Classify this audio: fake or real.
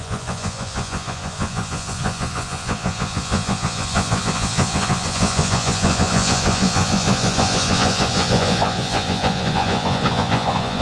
fake